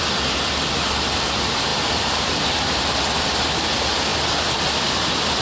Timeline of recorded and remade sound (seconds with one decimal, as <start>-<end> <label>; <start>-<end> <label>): 0.0-5.4 recorded